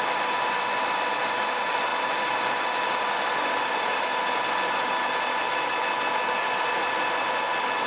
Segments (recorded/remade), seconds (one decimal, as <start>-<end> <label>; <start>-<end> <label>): 0.0-7.9 recorded